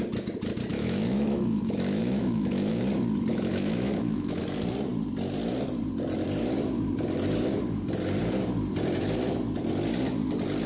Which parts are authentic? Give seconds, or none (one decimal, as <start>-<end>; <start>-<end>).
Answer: 0.0-0.7; 2.8-3.3; 4.4-10.7